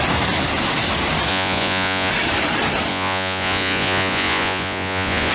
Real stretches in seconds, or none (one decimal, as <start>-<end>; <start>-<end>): 0.0-1.3; 2.1-2.9